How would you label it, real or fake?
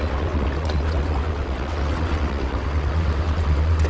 fake